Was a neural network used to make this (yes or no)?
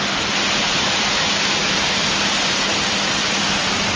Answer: no